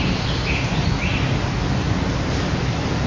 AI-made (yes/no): no